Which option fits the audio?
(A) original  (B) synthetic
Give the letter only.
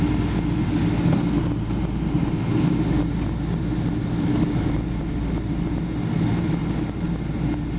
A